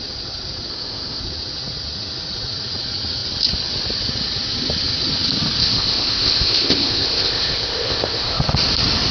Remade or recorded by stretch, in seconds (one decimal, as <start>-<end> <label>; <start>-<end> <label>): 0.0-0.7 recorded; 0.7-1.2 remade; 1.2-5.6 recorded; 5.6-8.4 remade; 8.4-9.1 recorded